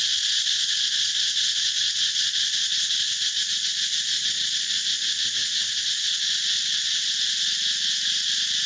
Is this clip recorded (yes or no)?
yes